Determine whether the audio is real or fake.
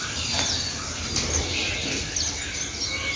real